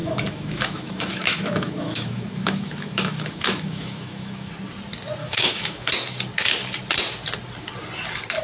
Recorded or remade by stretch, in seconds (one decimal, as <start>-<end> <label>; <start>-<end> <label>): 0.0-4.5 remade; 4.5-5.2 recorded; 5.2-5.9 remade; 5.9-8.4 recorded